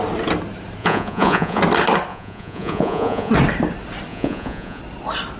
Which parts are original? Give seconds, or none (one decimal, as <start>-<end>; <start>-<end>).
0.0-0.8; 1.6-2.1; 3.3-4.1; 4.8-5.4